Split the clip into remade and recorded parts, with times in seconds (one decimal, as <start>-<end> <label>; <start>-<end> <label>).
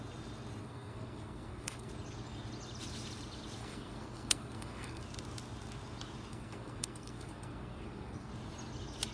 0.0-0.6 recorded; 0.6-1.9 remade; 1.9-3.6 recorded; 3.6-5.0 remade; 5.0-6.3 recorded; 6.3-8.3 remade; 8.3-9.1 recorded